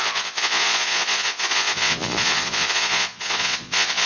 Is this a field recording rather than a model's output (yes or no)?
no